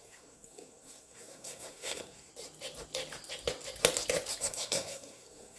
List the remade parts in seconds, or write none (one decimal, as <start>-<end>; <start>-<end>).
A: 0.0-2.3; 4.4-5.6